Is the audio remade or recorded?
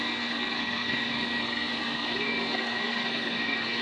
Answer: remade